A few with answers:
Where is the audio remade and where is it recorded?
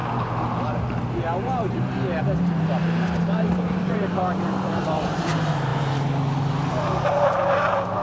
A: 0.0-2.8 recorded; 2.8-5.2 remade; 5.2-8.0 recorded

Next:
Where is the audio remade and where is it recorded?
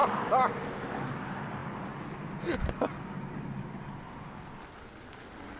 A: 0.0-5.6 recorded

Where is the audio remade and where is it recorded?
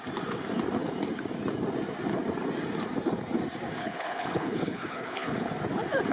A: 0.0-3.8 recorded; 3.8-5.5 remade; 5.5-6.1 recorded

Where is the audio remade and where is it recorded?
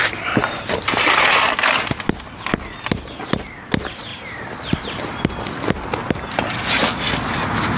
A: 0.0-4.1 recorded; 4.1-5.2 remade; 5.2-7.8 recorded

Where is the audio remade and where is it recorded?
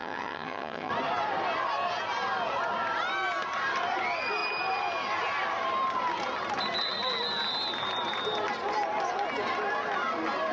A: 0.0-0.9 remade; 0.9-10.5 recorded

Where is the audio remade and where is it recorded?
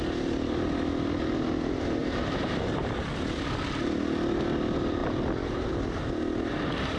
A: 0.0-2.0 recorded; 2.0-3.0 remade; 3.0-7.0 recorded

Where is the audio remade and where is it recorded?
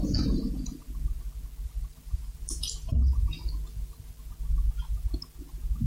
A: 0.0-5.9 recorded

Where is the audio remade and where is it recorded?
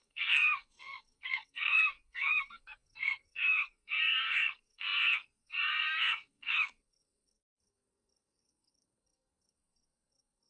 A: 0.0-10.5 remade